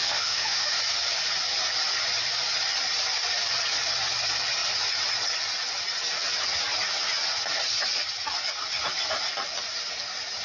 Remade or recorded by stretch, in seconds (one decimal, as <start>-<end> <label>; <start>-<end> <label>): 0.0-0.8 remade; 0.8-10.4 recorded